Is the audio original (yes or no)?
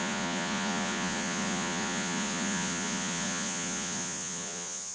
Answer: no